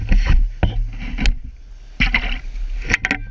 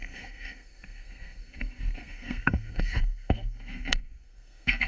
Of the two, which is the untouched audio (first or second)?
first